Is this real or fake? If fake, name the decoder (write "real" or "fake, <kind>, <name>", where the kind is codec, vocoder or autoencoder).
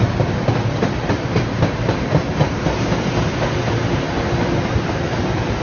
real